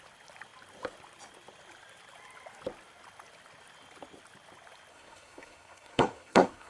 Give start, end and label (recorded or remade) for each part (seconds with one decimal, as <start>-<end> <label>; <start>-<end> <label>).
0.0-4.9 recorded; 4.9-6.7 remade